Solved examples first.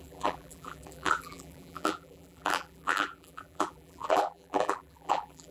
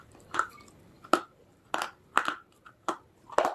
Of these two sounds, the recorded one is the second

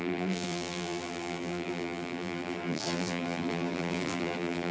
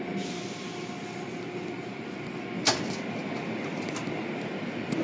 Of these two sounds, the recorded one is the second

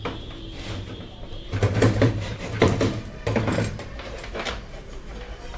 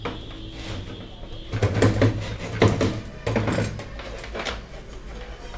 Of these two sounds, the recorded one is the second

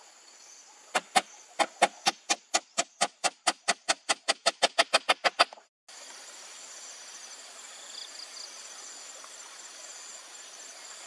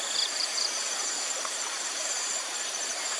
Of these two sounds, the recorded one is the first